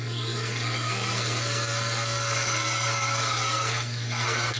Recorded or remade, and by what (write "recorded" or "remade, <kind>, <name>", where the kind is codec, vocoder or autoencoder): remade, codec, SNAC